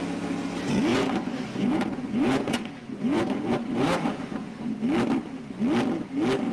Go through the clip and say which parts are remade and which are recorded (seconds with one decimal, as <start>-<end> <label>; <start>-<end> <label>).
0.0-0.9 recorded; 0.9-4.8 remade; 4.8-6.5 recorded